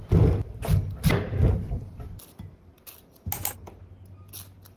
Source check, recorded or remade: recorded